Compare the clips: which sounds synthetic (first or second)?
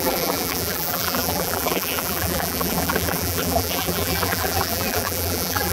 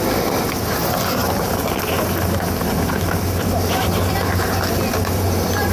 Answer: first